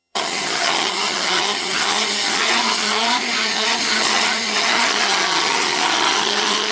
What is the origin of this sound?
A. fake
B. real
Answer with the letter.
A